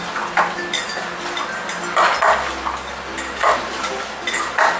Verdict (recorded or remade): recorded